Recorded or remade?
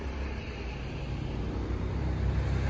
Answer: recorded